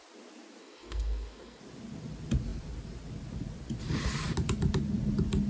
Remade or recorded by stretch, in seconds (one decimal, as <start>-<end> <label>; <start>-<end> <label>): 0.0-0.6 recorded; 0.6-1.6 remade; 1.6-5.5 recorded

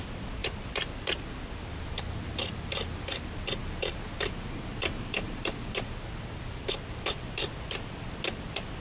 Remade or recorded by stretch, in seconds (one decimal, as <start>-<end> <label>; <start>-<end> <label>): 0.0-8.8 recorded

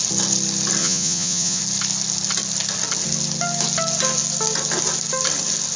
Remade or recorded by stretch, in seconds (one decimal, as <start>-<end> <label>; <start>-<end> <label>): 0.0-0.8 recorded; 0.8-1.6 remade; 1.6-5.8 recorded